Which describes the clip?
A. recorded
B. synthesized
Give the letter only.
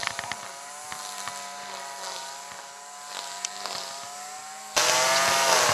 A